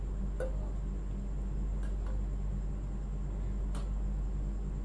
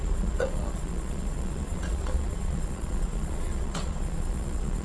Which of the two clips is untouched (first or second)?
first